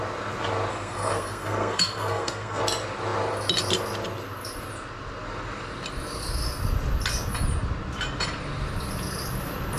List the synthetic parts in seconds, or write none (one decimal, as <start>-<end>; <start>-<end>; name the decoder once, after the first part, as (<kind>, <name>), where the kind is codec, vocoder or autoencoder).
0.7-2.6 (codec, SNAC)

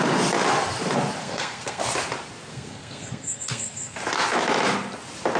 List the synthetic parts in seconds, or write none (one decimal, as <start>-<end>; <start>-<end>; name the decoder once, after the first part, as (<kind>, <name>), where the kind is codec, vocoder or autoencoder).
1.2-1.8 (codec, SNAC); 2.5-4.0

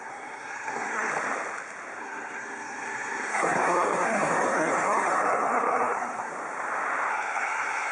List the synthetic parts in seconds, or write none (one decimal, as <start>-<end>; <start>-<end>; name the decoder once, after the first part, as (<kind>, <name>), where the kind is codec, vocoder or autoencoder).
0.0-1.1 (codec, SNAC); 2.0-6.3; 7.1-7.9

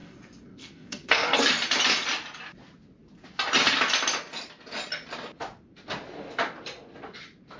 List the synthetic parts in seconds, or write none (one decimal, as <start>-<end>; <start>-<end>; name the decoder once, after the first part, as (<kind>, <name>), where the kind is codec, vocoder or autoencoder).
0.0-1.5 (codec, SNAC)

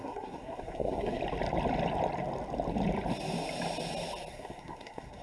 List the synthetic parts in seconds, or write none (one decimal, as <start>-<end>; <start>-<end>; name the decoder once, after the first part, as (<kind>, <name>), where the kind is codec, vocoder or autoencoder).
0.0-1.2 (codec, SNAC); 4.3-5.2

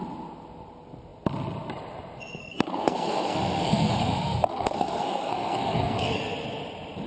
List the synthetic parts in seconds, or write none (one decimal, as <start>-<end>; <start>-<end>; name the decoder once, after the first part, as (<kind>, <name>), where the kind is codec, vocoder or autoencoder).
2.4-6.2 (codec, SNAC)